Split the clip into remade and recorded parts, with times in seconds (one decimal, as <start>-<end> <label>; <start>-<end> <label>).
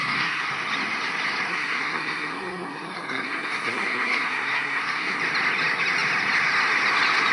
0.0-0.5 remade; 0.5-1.5 recorded; 1.5-5.2 remade; 5.2-7.3 recorded